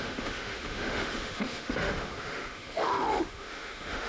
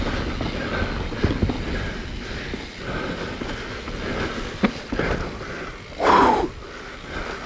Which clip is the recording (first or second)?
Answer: second